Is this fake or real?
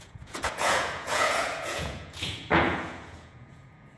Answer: fake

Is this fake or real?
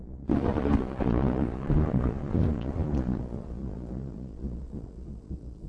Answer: fake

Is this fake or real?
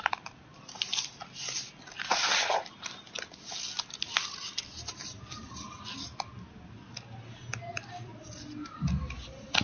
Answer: real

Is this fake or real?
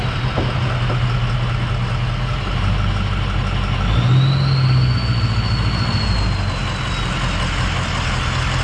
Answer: real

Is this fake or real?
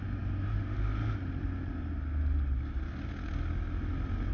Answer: real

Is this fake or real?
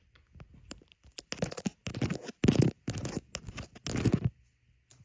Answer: real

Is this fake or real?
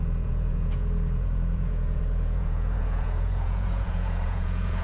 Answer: fake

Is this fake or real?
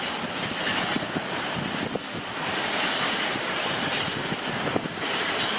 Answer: real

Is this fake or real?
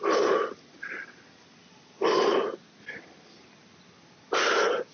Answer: real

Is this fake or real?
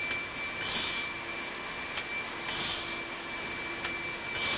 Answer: real